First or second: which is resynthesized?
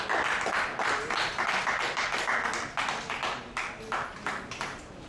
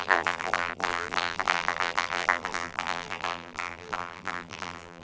second